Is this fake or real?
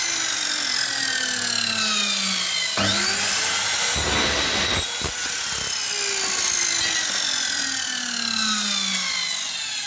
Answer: real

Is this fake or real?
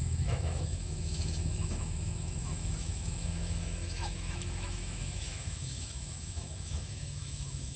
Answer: fake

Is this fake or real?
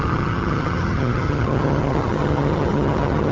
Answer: fake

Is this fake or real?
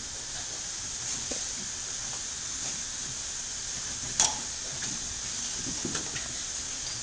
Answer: real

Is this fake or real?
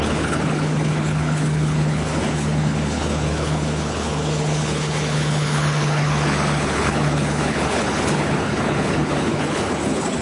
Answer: fake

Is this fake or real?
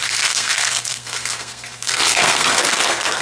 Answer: fake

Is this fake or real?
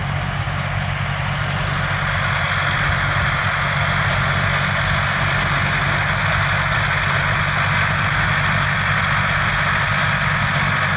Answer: real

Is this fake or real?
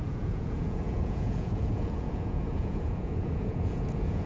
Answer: fake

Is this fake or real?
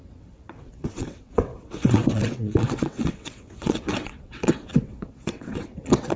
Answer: fake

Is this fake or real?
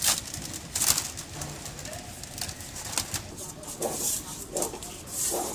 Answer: real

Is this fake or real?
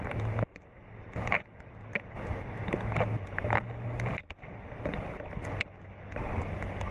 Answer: real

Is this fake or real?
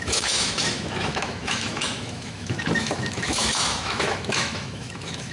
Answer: fake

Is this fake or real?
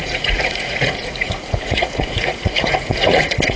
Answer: fake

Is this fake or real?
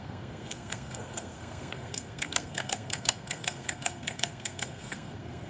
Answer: fake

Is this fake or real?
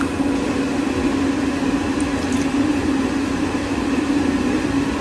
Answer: fake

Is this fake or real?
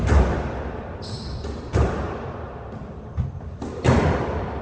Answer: real